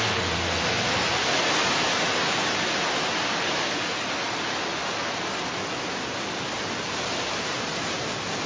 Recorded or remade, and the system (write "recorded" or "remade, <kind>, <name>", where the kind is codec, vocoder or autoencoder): recorded